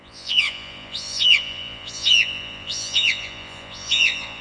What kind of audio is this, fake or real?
fake